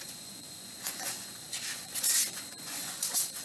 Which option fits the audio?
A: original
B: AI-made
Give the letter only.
B